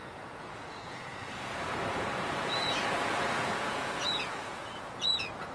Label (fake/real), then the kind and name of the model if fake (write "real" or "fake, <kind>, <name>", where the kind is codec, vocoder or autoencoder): fake, vocoder, Vocos